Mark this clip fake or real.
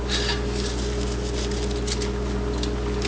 real